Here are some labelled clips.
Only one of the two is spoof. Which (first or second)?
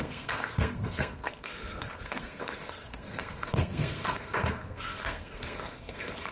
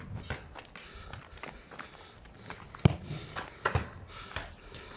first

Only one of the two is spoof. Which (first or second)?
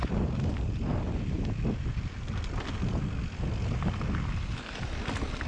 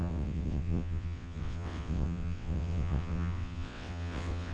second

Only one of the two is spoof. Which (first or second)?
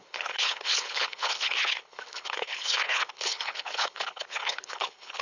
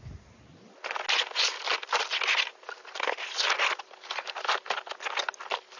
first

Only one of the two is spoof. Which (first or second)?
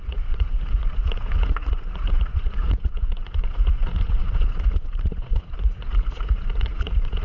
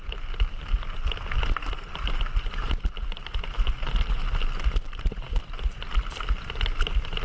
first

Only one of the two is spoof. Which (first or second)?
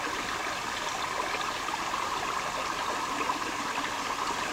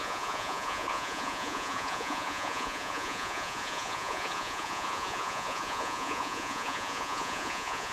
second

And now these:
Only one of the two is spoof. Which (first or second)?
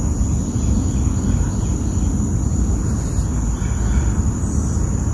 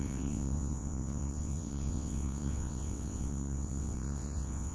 second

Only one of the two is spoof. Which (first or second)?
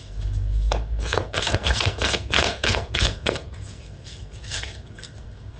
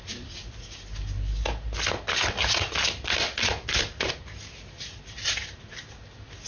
first